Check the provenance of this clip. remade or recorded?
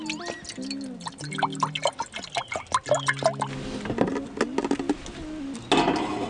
recorded